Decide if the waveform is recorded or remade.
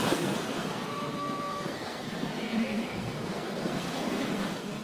remade